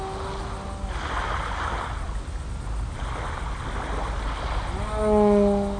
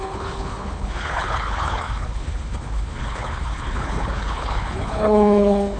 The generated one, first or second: second